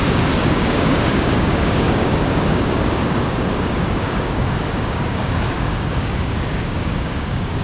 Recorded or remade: remade